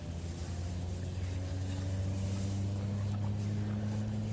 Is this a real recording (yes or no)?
yes